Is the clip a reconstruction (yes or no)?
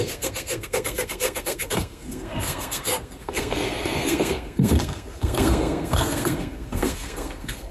yes